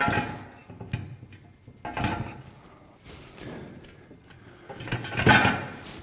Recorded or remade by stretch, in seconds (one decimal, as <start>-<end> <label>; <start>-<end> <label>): 0.0-6.0 recorded